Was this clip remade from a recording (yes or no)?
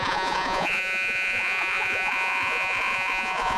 yes